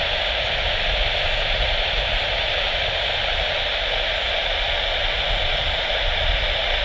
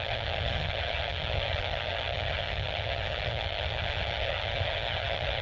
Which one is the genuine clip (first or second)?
first